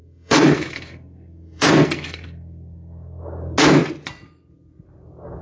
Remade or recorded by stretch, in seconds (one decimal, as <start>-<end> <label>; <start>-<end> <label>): 0.0-3.2 remade; 3.2-5.4 recorded